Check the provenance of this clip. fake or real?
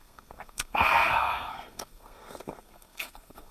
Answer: fake